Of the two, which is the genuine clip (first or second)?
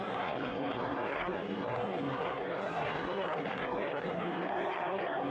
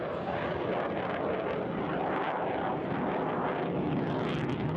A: second